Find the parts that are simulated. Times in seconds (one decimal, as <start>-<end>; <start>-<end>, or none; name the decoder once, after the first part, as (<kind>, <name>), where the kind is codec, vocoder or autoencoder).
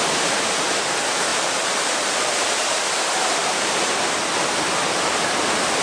1.3-3.9 (vocoder, BigVGAN v2)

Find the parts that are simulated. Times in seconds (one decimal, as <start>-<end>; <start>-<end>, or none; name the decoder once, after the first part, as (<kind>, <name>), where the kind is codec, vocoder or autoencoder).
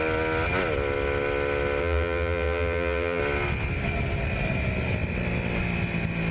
1.8-3.2 (vocoder, BigVGAN v2)